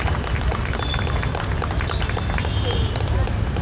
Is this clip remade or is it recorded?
recorded